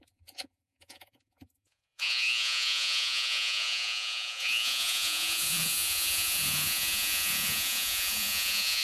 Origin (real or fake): fake